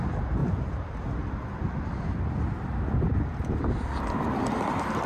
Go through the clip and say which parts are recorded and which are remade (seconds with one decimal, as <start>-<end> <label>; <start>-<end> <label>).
0.0-5.1 recorded